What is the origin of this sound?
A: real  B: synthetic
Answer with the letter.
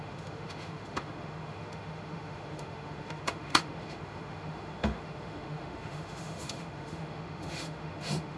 B